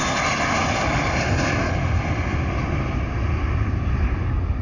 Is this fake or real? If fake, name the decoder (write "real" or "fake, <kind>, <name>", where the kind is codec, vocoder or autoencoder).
real